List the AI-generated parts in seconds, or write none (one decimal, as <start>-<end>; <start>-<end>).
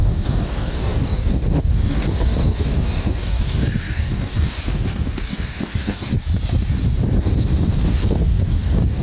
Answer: 0.0-6.1; 7.2-9.0